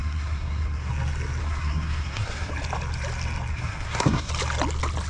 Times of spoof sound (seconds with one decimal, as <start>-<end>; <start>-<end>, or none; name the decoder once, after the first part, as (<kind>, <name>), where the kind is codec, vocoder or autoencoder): 0.0-0.9 (codec, SNAC); 1.4-2.5; 3.5-4.3